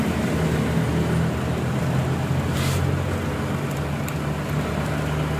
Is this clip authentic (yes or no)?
yes